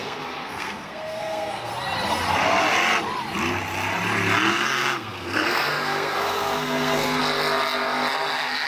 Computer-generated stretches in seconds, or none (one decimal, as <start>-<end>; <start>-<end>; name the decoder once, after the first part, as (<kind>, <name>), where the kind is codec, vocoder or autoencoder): 0.0-1.7 (codec, SNAC); 4.5-7.2; 8.1-8.7